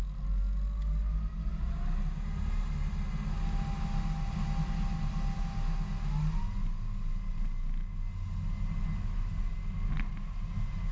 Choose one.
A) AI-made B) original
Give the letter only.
B